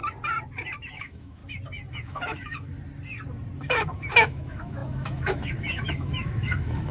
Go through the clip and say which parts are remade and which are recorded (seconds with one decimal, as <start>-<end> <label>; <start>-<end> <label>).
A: 0.0-0.9 recorded; 0.9-1.4 remade; 1.4-1.9 recorded; 1.9-2.7 remade; 2.7-3.6 recorded; 3.6-6.9 remade